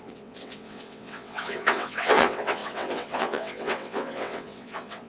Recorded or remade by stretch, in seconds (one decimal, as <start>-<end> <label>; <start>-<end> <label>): 0.0-5.1 remade